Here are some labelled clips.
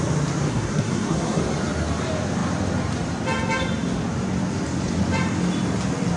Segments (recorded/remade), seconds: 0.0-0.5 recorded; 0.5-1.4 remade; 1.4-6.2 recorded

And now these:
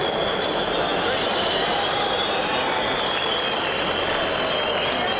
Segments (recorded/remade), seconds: 0.0-5.2 recorded

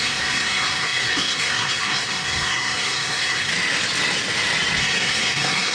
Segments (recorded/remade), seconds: 0.0-3.5 remade; 3.5-4.8 recorded; 4.8-5.7 remade

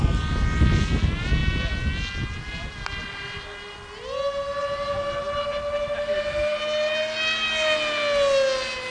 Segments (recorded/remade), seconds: 0.0-8.9 recorded

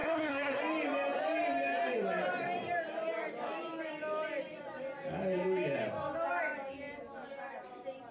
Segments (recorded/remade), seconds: 0.0-0.6 remade; 0.6-8.1 recorded

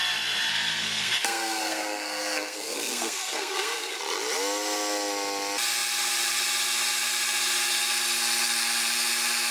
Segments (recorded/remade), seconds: 0.0-0.5 recorded; 0.5-4.0 remade; 4.0-9.5 recorded